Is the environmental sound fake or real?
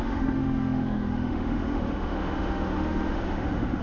fake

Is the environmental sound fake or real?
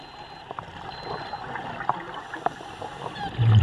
real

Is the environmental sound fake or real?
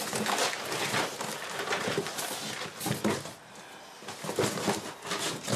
real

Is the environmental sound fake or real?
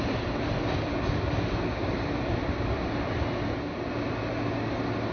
real